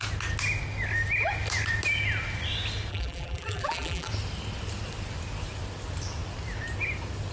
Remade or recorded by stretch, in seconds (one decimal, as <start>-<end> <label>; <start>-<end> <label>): 0.0-2.9 recorded; 2.9-4.1 remade; 4.1-7.3 recorded

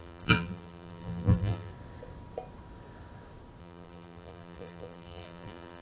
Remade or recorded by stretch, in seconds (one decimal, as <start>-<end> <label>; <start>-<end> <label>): 0.0-1.7 remade; 1.7-3.6 recorded; 3.6-5.8 remade

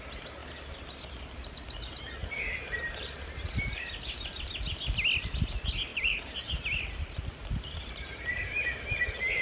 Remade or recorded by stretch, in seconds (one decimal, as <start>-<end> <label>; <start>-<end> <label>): 0.0-0.4 recorded; 0.4-1.0 remade; 1.0-2.2 recorded; 2.2-4.4 remade; 4.4-5.9 recorded; 5.9-6.5 remade; 6.5-7.4 recorded; 7.4-9.4 remade

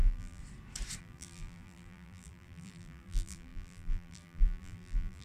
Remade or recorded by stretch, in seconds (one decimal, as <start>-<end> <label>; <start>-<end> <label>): 0.0-0.4 remade; 0.4-1.0 recorded; 1.0-5.2 remade

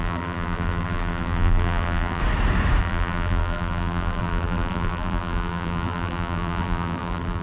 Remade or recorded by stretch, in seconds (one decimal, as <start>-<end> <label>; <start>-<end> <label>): 0.0-2.2 remade; 2.2-2.8 recorded; 2.8-7.4 remade

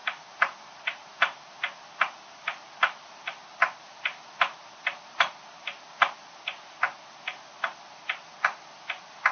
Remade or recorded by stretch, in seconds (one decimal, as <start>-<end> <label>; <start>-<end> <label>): 0.0-1.5 remade; 1.5-2.3 recorded; 2.3-3.0 remade; 3.0-9.3 recorded

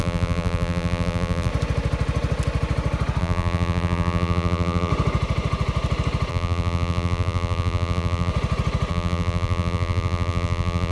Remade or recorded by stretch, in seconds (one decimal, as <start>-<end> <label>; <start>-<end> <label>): 0.0-1.5 remade; 1.5-3.2 recorded; 3.2-4.9 remade; 4.9-6.3 recorded; 6.3-8.3 remade; 8.3-8.9 recorded; 8.9-10.9 remade